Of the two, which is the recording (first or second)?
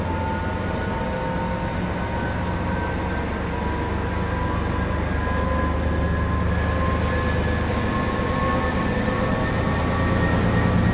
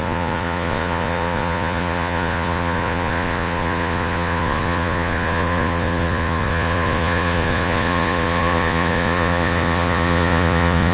first